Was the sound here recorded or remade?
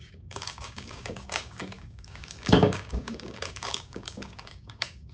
remade